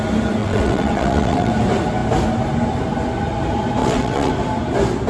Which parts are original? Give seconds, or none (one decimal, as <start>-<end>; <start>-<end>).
0.0-0.4; 1.5-3.8; 4.3-5.1